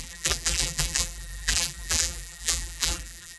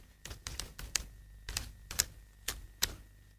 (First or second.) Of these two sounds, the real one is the second